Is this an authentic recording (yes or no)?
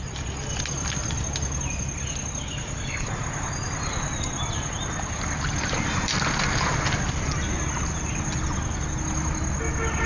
yes